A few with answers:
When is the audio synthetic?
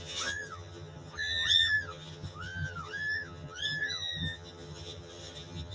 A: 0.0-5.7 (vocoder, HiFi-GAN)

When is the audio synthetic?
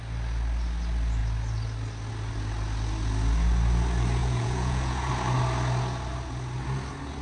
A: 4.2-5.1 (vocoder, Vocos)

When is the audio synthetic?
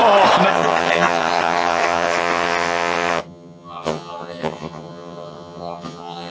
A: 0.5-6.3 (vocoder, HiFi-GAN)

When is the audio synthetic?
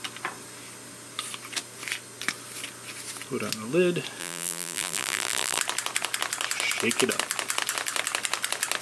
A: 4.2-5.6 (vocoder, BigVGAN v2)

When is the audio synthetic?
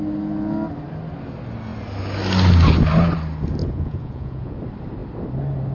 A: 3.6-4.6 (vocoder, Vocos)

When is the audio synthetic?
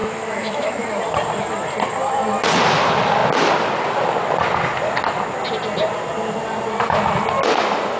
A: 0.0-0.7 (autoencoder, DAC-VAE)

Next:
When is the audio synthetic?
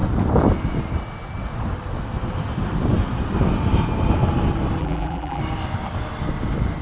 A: 4.8-5.4 (vocoder, BigVGAN v2)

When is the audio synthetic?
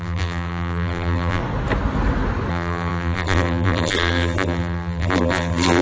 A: 0.0-1.4 (vocoder, BigVGAN v2); 2.5-5.8